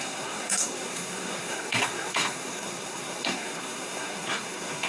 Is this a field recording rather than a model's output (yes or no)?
no